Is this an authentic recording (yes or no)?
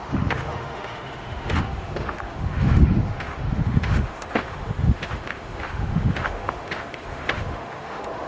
no